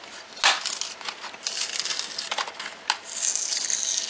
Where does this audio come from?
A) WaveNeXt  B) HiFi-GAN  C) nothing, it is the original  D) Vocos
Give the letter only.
C